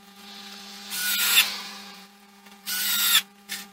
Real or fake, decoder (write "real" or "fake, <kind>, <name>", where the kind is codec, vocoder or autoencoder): fake, vocoder, Vocos